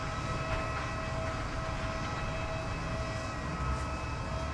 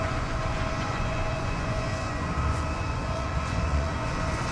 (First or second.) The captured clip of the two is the first